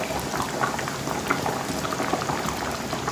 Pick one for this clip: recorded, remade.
recorded